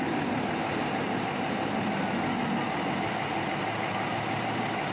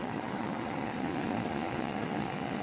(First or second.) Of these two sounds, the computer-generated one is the second